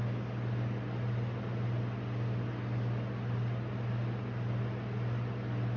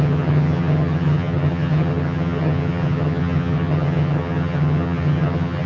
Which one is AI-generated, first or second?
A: second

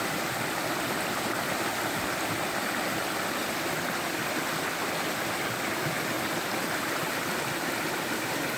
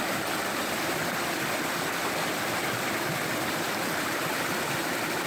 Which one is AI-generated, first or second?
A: second